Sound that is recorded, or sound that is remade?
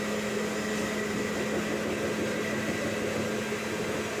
recorded